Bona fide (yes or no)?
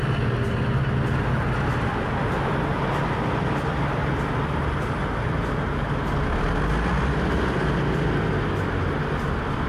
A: yes